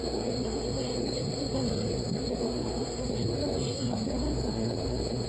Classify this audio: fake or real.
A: fake